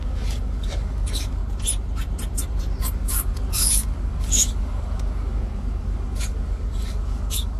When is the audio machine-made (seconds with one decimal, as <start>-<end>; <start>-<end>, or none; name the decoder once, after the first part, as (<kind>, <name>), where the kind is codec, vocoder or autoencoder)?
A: 0.0-1.4 (codec, DAC); 2.8-7.6